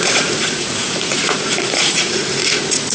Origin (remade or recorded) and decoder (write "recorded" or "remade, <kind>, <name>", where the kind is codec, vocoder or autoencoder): remade, vocoder, Vocos